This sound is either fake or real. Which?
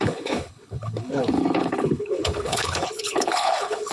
fake